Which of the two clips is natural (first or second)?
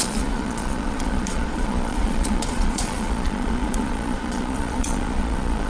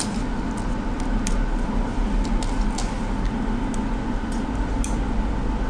second